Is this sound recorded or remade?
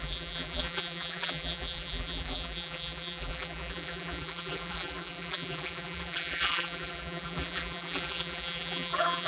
remade